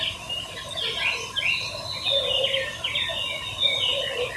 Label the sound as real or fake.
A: real